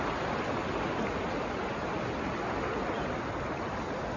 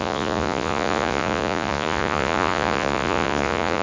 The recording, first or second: first